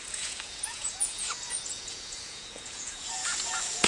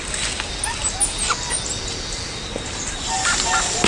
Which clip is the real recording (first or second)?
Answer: second